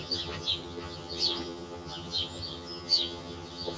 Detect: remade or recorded remade